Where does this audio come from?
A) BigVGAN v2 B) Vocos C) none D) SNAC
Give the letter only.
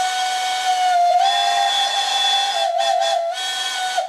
C